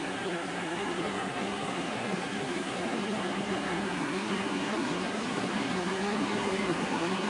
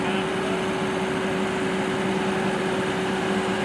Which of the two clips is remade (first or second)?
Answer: first